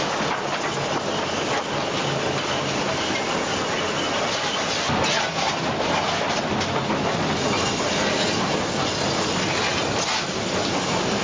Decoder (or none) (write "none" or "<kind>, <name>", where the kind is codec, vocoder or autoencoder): none